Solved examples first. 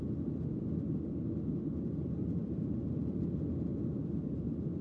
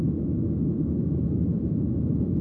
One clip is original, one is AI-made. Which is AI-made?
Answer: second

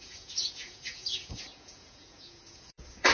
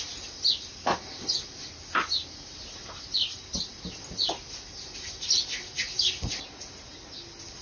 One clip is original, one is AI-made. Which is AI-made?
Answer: first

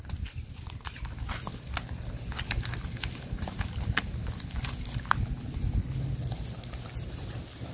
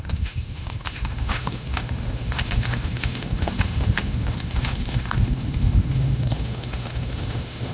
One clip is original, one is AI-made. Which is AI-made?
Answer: second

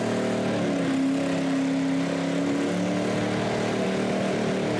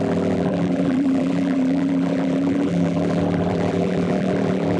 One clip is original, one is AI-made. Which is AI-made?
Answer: second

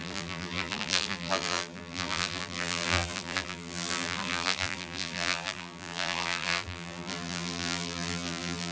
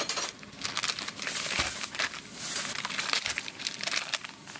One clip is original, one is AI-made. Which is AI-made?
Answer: first